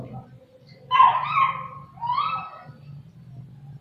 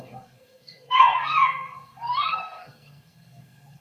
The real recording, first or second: first